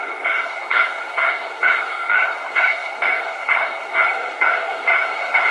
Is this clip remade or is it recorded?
remade